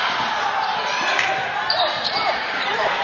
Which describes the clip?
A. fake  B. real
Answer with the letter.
A